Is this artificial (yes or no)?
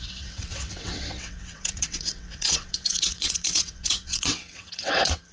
yes